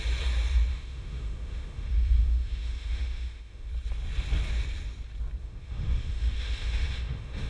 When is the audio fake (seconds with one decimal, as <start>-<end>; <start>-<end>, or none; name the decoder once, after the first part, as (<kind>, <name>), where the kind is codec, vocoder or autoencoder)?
0.7-3.7 (autoencoder, DAC-VAE); 5.4-7.5